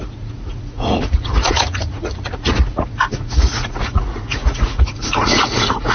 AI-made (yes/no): yes